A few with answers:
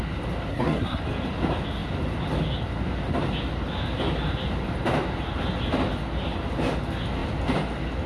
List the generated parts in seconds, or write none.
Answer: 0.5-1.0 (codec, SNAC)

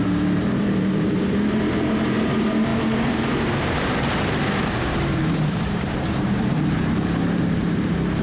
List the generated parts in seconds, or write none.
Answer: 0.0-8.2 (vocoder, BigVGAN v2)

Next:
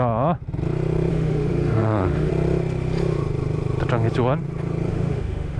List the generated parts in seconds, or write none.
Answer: 1.1-2.3 (autoencoder, DAC-VAE); 4.9-5.6

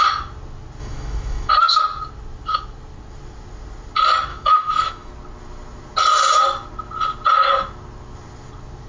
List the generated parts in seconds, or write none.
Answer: 0.8-1.5 (autoencoder, DAC-VAE); 4.3-5.1

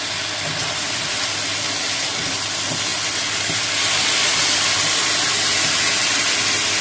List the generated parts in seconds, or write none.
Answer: none

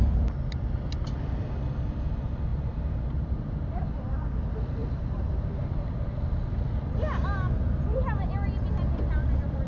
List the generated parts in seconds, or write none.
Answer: 2.5-4.0 (vocoder, BigVGAN v2); 4.8-6.0